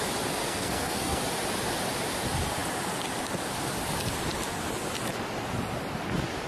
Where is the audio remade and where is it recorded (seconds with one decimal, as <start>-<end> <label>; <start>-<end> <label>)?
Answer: 0.0-0.4 recorded; 0.4-1.2 remade; 1.2-6.5 recorded